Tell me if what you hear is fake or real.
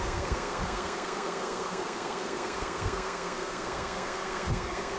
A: fake